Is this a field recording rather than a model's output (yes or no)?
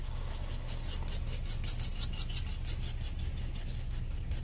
yes